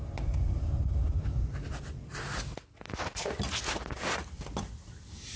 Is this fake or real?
real